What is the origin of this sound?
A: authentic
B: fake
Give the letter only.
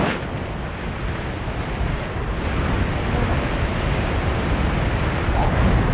A